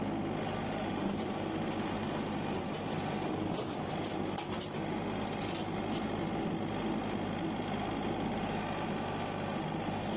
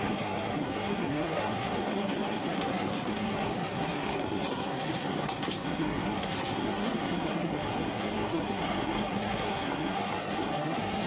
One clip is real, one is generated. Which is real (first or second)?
first